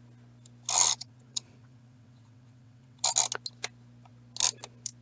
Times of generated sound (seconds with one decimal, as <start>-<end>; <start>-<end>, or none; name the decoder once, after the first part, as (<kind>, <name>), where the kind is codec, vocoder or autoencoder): 1.0-3.0 (vocoder, WaveNeXt)